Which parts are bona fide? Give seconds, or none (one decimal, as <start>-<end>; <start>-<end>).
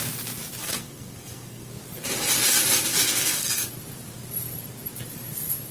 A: 0.0-0.6; 1.7-2.9; 3.7-5.7